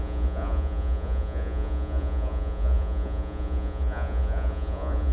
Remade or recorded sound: remade